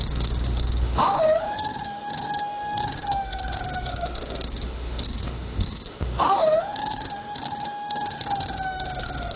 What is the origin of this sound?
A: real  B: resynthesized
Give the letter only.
B